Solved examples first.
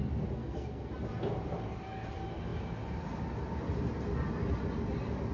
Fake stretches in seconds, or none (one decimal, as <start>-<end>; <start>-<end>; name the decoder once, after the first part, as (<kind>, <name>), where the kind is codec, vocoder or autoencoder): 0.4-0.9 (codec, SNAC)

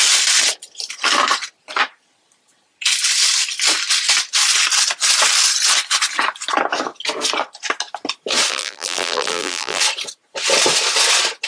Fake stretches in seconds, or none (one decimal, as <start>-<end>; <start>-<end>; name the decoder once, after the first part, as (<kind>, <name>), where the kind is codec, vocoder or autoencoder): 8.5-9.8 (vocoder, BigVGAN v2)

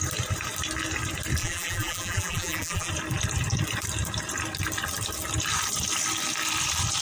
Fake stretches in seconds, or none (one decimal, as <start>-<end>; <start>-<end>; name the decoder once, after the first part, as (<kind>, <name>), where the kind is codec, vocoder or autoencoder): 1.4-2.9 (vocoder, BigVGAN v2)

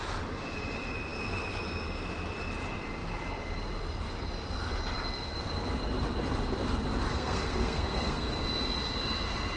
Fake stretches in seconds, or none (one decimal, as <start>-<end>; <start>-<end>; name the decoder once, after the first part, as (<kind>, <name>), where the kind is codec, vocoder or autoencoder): 7.1-8.3 (codec, SNAC)

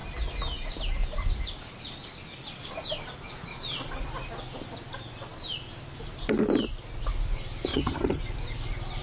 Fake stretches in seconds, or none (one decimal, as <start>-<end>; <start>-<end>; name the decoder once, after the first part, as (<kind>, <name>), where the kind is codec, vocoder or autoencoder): 7.7-8.2 (vocoder, HiFi-GAN)

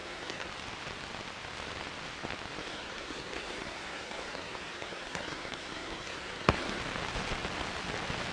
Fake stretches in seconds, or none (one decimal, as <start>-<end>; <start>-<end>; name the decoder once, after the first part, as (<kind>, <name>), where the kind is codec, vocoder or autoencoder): 0.0-0.5 (codec, SNAC); 2.6-6.8